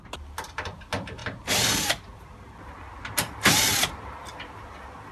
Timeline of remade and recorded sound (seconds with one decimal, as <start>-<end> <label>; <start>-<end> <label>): 0.0-5.1 recorded